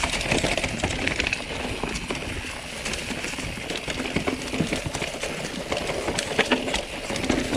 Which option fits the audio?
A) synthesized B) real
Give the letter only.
B